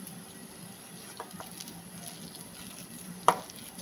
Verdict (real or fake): real